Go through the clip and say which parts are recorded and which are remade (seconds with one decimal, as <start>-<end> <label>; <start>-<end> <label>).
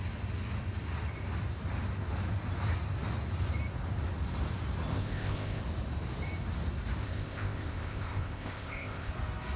0.0-4.9 recorded; 4.9-5.6 remade; 5.6-7.0 recorded; 7.0-9.1 remade; 9.1-9.6 recorded